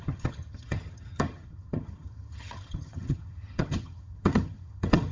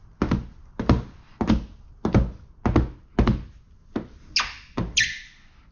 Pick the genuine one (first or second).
second